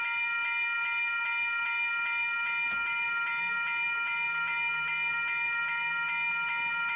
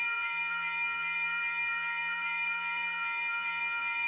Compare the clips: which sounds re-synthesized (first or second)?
second